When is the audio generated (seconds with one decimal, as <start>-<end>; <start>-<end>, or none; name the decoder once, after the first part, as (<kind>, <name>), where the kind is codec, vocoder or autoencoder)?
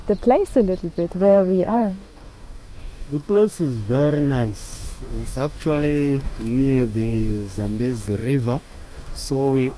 1.1-9.8 (codec, DAC)